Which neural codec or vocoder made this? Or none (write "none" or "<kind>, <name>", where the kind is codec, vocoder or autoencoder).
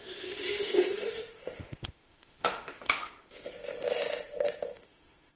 autoencoder, DAC-VAE